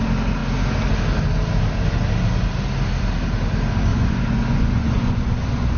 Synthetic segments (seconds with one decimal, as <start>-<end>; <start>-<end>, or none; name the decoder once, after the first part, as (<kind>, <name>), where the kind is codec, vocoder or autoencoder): 3.9-5.8 (vocoder, Vocos)